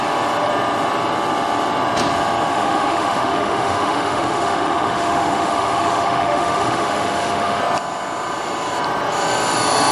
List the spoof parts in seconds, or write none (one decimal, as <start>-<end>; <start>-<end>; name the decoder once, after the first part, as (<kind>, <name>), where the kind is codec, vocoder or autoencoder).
2.5-7.6 (autoencoder, DAC-VAE)